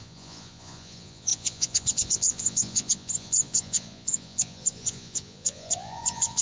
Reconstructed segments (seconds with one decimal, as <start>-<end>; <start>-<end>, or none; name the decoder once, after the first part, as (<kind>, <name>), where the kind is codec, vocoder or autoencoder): 0.0-6.4 (vocoder, Vocos)